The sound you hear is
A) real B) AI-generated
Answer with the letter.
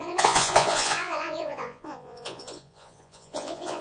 B